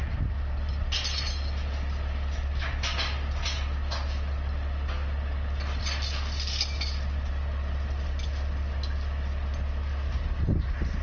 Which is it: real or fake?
real